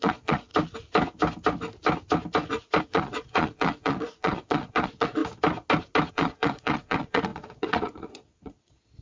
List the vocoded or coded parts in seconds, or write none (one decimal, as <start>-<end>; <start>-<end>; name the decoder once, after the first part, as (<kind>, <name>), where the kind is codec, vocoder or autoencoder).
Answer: 0.0-0.5 (vocoder, Vocos); 2.8-5.2; 6.1-9.0